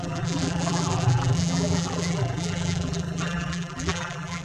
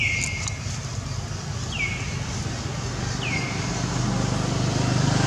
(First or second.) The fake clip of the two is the first